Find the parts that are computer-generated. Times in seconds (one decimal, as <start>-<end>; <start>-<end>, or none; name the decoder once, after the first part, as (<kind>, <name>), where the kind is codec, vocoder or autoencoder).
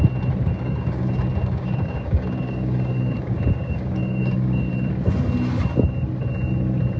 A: 0.5-4.7 (codec, DAC)